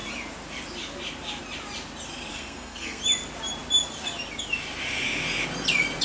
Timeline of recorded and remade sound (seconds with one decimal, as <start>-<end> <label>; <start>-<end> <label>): 0.0-2.3 recorded; 2.3-3.0 remade; 3.0-6.0 recorded